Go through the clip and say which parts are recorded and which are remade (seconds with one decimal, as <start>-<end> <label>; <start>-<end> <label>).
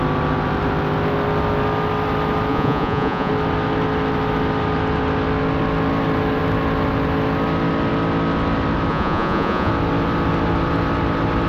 0.0-2.5 recorded; 2.5-3.3 remade; 3.3-8.9 recorded; 8.9-9.7 remade; 9.7-11.5 recorded